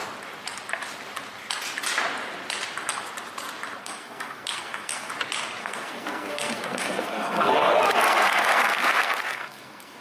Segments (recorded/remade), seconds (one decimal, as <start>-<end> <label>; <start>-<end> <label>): 0.0-3.8 recorded; 3.8-5.1 remade; 5.1-5.6 recorded; 5.6-10.0 remade